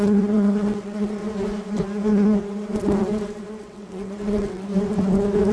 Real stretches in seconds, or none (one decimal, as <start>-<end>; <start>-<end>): 1.2-3.6; 4.7-5.5